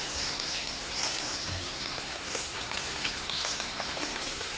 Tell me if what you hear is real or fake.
fake